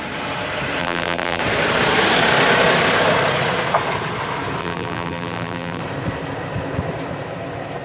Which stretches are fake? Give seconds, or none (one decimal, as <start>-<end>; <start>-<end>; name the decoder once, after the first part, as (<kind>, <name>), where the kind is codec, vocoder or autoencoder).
0.8-1.4 (vocoder, BigVGAN v2); 4.6-5.8